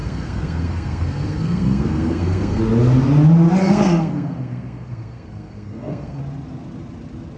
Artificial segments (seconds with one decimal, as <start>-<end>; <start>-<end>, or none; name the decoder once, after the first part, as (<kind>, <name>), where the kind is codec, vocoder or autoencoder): 0.0-2.6 (codec, SNAC); 3.6-6.2